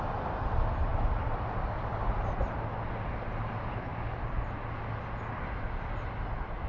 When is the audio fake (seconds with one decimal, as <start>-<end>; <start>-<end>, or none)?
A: none